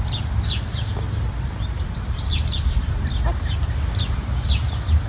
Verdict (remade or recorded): recorded